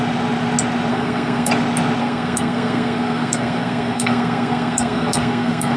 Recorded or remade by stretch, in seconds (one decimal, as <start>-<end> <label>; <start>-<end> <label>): 0.0-0.9 recorded; 0.9-1.5 remade; 1.5-2.0 recorded; 2.0-5.8 remade